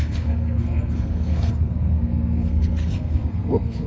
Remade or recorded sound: remade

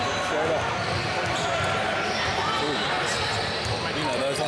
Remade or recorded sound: recorded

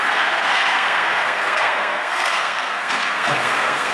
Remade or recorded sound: remade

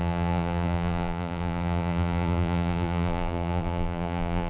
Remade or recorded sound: remade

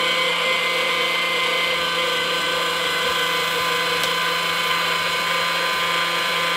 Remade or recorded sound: recorded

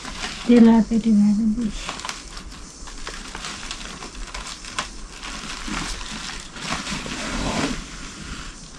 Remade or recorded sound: recorded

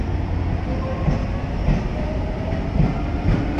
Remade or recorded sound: recorded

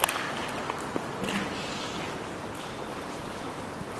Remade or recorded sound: recorded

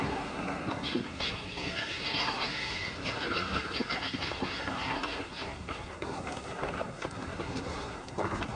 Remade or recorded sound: remade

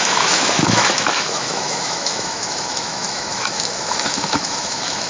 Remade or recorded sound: remade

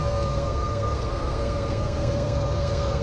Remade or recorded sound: remade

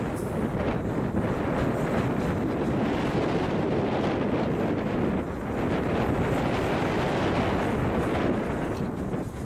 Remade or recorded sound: recorded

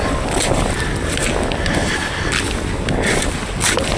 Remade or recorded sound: recorded